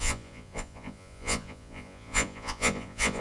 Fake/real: fake